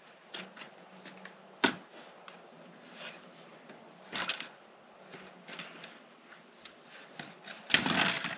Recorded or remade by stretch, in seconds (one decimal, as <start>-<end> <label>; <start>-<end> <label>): 0.0-4.3 recorded; 4.3-8.0 remade; 8.0-8.4 recorded